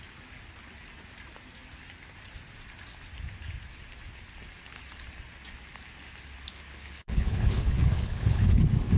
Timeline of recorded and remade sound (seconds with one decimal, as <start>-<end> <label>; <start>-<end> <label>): 0.0-6.5 recorded; 6.5-8.6 remade; 8.6-9.0 recorded